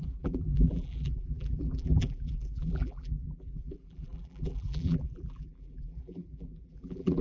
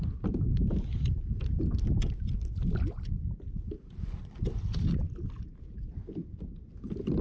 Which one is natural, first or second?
second